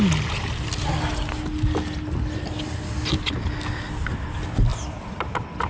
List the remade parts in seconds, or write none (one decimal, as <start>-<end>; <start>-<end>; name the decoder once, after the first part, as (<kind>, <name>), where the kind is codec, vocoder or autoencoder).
none